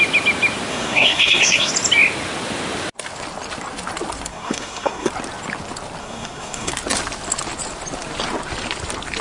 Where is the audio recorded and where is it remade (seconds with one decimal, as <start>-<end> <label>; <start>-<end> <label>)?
0.0-0.7 recorded; 0.7-1.7 remade; 1.7-4.3 recorded; 4.3-5.1 remade; 5.1-6.0 recorded; 6.0-6.7 remade; 6.7-9.2 recorded